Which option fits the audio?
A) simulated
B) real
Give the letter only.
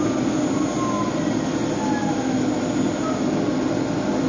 B